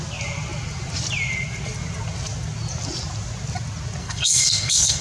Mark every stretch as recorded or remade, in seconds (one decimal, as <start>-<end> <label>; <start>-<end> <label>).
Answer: 0.0-4.0 recorded; 4.0-5.0 remade